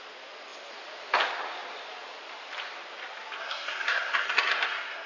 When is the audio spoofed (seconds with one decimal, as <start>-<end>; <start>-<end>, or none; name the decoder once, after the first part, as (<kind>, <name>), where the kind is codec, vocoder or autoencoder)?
3.4-5.1 (codec, SNAC)